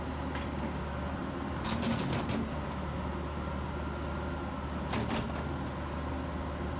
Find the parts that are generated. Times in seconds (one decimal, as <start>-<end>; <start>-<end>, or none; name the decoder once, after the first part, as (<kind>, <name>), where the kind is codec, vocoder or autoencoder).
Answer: 1.2-1.9 (vocoder, BigVGAN v2)